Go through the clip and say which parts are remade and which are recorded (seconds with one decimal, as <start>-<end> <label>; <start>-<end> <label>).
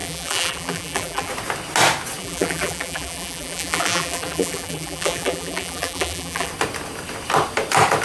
0.0-1.3 remade; 1.3-2.2 recorded; 2.2-6.5 remade; 6.5-8.0 recorded